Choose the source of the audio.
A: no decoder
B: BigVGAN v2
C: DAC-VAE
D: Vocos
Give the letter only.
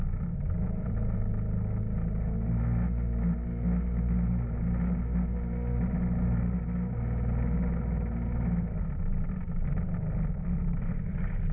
A